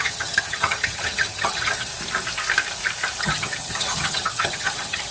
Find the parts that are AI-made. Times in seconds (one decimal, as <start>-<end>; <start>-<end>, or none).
0.0-1.9; 3.2-5.1

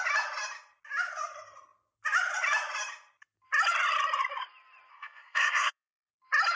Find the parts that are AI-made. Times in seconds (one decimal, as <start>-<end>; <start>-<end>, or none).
4.9-6.1

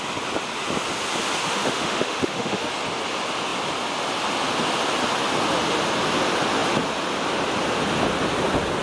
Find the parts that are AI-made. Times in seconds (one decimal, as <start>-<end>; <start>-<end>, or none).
1.4-2.7

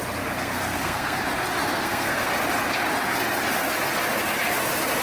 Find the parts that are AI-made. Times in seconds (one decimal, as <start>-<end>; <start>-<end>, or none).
0.4-1.2; 1.7-2.3

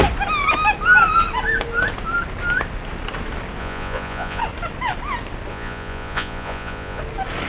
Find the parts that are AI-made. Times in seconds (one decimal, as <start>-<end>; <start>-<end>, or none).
3.6-4.4; 5.5-7.0

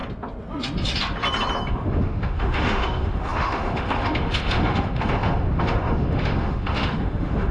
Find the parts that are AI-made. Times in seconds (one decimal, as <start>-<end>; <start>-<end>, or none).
1.7-7.5

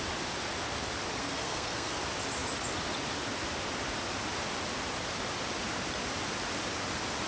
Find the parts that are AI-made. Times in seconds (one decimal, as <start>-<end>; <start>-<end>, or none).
1.2-2.0